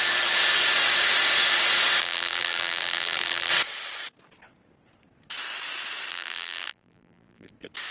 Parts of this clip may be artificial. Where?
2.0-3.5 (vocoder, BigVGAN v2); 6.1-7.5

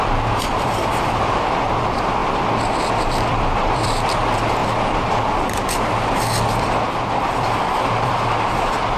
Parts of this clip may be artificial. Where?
0.0-2.2 (vocoder, BigVGAN v2); 3.0-4.6; 6.6-9.0

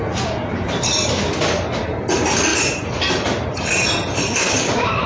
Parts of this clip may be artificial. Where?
2.5-5.1 (vocoder, BigVGAN v2)

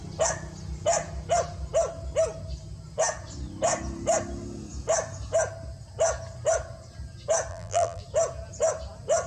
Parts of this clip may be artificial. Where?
7.5-8.0 (vocoder, BigVGAN v2)

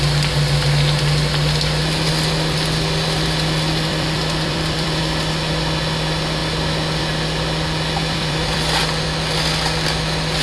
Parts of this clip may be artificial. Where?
3.9-5.0 (vocoder, BigVGAN v2); 8.0-8.8

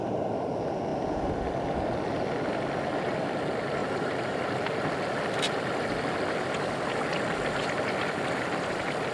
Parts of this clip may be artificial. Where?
3.8-4.4 (vocoder, BigVGAN v2)

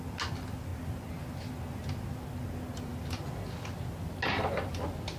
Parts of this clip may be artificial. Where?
2.9-4.1 (vocoder, BigVGAN v2)